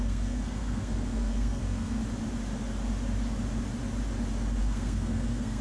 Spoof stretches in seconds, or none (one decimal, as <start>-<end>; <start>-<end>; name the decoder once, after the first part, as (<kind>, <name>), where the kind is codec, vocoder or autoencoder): 0.0-2.0 (codec, SNAC); 4.6-5.6